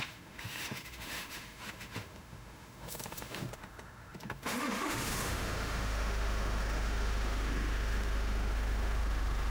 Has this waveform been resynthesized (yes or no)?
yes